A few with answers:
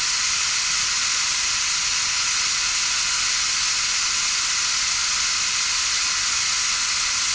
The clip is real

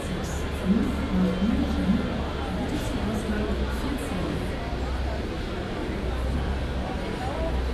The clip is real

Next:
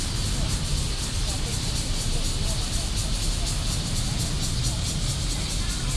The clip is real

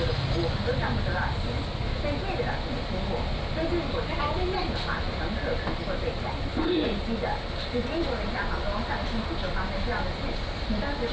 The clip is real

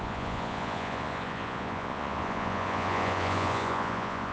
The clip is fake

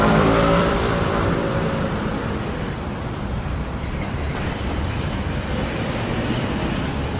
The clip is fake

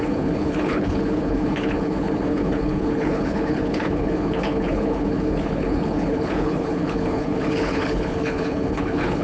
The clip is fake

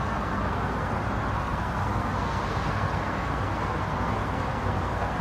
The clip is fake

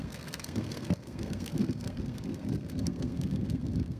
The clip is fake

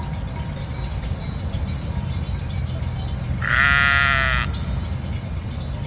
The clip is real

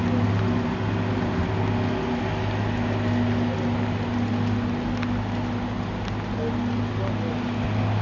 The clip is real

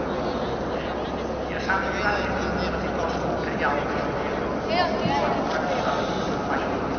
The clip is real